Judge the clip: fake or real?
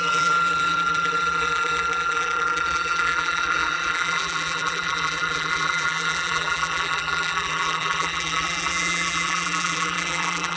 fake